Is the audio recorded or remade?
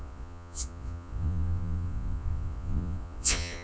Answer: remade